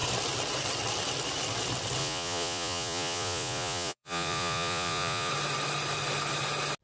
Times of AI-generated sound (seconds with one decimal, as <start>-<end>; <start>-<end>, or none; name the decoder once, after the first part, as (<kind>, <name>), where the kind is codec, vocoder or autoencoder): 2.0-5.3 (vocoder, Vocos)